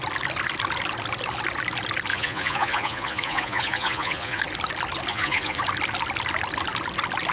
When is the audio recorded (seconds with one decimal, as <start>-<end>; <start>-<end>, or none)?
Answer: 0.0-2.1; 4.4-5.1; 5.6-7.3